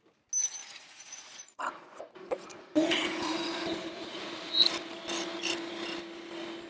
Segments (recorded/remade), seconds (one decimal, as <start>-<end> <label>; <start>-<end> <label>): 0.0-0.6 recorded; 0.6-4.6 remade; 4.6-6.7 recorded